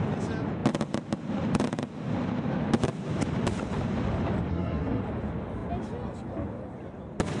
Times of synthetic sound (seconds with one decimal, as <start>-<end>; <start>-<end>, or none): 4.5-5.0